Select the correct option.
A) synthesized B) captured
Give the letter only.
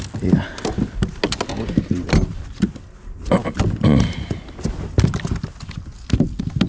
B